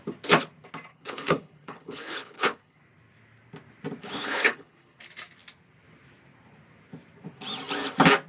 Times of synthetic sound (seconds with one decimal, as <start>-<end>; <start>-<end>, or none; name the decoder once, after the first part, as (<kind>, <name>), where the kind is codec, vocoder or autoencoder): 0.9-2.8 (codec, HILCodec); 4.0-5.0